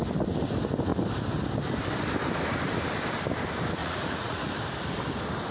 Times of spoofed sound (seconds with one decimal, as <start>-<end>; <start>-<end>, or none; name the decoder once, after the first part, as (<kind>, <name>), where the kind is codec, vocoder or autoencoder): 3.8-4.5 (vocoder, Vocos)